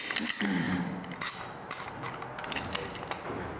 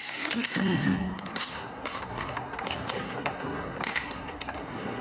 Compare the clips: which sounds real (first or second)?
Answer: first